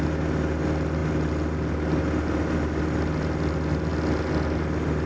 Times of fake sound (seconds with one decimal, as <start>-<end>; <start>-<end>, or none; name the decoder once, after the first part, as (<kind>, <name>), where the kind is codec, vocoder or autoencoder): none